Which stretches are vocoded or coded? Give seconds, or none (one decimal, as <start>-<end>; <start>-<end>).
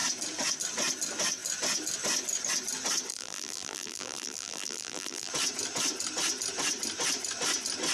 3.1-5.3